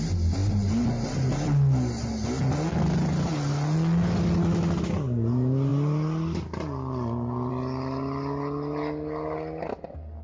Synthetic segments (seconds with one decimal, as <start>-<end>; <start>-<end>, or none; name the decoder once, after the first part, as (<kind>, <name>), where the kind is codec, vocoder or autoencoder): none